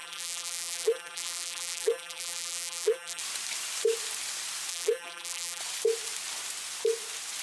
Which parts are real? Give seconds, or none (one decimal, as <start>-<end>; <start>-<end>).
3.2-4.7; 5.6-7.4